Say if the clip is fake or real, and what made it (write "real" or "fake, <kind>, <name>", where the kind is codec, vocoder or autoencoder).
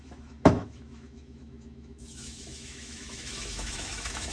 fake, autoencoder, DAC-VAE